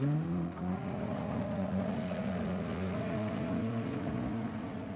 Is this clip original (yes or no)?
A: no